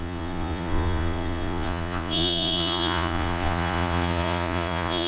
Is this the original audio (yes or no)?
no